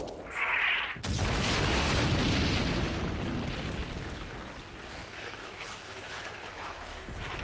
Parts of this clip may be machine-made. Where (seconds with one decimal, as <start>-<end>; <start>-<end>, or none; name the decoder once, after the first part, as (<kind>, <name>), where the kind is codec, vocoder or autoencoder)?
5.0-7.0 (autoencoder, DAC-VAE)